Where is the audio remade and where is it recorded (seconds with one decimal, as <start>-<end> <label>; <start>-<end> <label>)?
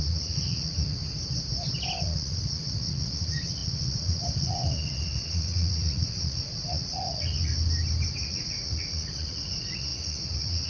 0.0-1.0 remade; 1.0-2.0 recorded; 2.0-7.5 remade; 7.5-8.2 recorded; 8.2-10.7 remade